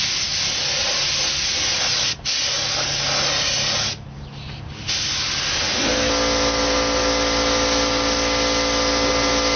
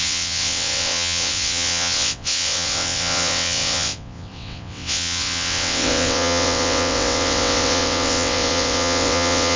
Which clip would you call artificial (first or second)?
second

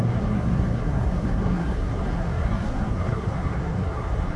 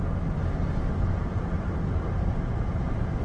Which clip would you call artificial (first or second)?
first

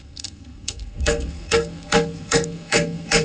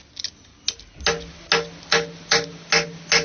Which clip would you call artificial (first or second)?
first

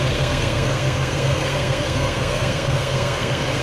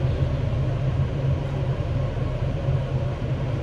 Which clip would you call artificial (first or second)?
first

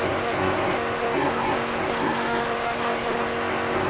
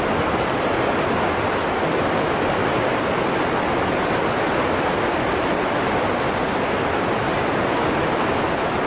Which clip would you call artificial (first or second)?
first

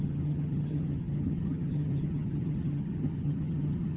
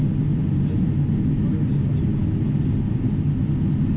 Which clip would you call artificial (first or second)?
first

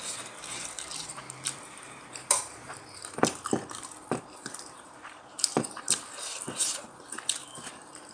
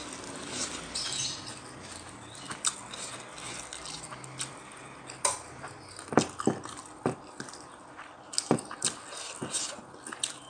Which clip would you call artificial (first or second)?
first